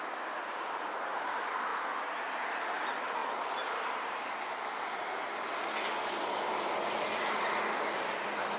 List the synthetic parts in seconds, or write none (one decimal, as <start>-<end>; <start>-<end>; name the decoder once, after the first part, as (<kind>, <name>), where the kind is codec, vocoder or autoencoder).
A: none